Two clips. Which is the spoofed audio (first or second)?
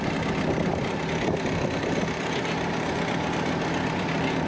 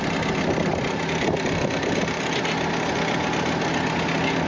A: first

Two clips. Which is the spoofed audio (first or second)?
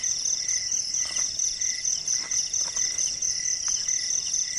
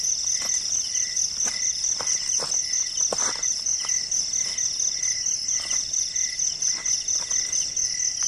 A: first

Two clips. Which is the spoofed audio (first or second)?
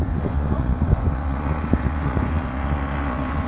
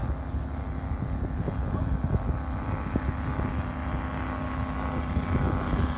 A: first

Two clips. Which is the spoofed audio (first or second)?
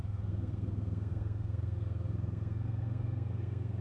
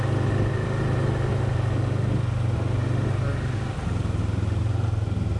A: first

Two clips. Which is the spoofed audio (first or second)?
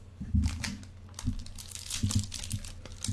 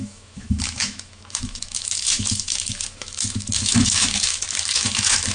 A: second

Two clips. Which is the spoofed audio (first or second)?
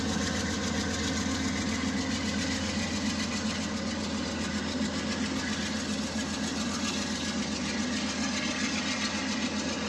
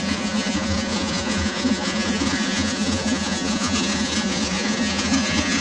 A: second